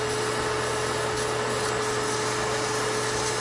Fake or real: real